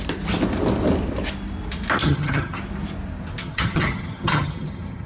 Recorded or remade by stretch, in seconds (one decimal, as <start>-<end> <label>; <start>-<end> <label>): 0.0-2.0 recorded; 2.0-2.6 remade; 2.6-3.4 recorded; 3.4-5.1 remade